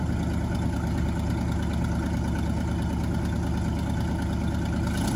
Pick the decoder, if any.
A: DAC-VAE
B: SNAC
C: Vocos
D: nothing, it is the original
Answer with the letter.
D